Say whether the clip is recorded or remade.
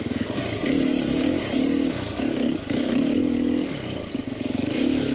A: remade